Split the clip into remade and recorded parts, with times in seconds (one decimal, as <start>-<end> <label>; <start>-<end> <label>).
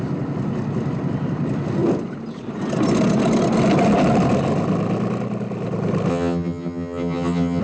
0.0-6.1 recorded; 6.1-7.6 remade